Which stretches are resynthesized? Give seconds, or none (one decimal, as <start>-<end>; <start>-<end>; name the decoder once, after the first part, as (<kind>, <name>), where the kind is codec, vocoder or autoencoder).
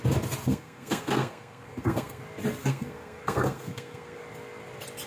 0.5-2.2 (codec, SNAC); 2.6-4.2